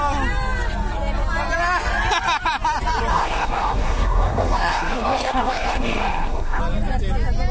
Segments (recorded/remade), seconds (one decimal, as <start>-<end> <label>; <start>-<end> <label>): 0.0-3.1 recorded; 3.1-6.6 remade; 6.6-7.5 recorded